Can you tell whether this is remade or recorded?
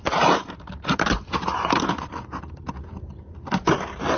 remade